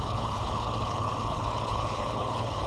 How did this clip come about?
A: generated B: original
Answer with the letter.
A